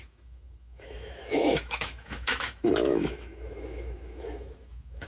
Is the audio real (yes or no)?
no